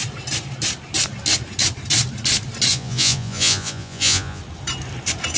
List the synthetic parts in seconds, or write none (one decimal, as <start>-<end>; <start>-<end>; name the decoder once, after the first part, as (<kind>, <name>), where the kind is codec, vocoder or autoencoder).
2.7-4.4 (vocoder, Vocos)